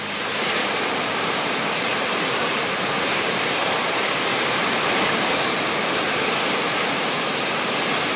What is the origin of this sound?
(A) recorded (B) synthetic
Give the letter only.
B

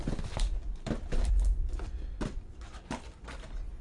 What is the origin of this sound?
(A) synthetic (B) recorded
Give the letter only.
A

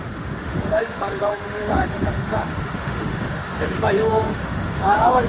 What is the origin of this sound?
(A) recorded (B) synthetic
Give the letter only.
B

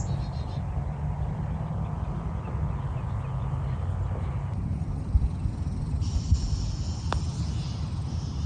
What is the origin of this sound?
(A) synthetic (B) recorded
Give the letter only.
B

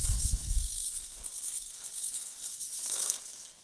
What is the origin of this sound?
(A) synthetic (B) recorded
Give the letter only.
A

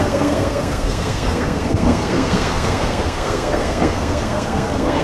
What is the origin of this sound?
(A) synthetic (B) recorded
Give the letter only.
A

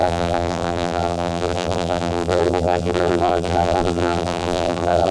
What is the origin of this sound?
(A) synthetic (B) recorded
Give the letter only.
A